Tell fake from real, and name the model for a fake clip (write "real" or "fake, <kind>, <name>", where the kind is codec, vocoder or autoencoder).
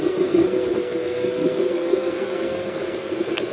fake, codec, SNAC